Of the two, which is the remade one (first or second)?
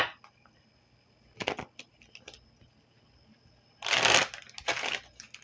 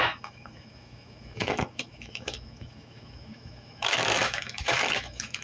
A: second